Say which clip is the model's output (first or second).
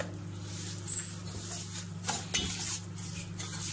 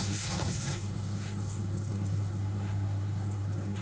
second